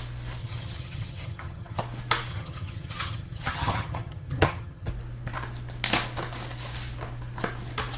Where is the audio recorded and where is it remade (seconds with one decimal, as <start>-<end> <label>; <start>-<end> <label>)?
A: 0.0-0.4 recorded; 0.4-1.8 remade; 1.8-2.3 recorded; 2.3-4.9 remade; 4.9-8.0 recorded